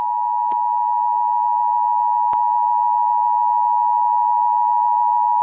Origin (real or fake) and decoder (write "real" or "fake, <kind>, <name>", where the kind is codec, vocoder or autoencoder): real